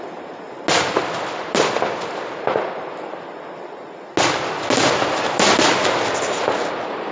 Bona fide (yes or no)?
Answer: yes